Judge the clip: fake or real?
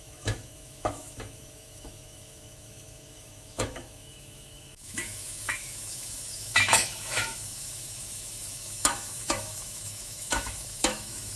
fake